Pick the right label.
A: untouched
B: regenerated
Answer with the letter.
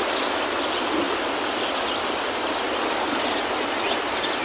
A